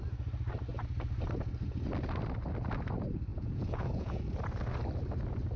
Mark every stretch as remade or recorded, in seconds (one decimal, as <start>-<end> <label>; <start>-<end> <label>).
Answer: 0.0-3.3 recorded; 3.3-4.2 remade; 4.2-5.6 recorded